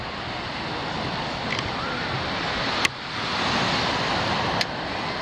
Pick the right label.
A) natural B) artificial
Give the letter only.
A